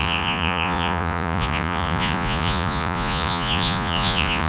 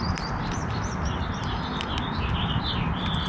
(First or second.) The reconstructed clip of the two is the first